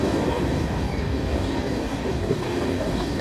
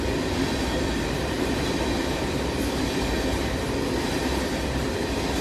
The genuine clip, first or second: second